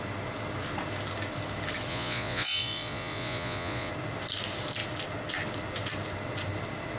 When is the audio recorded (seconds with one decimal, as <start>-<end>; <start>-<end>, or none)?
0.0-1.9; 3.9-7.0